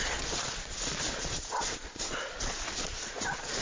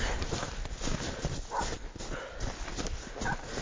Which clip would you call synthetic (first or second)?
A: first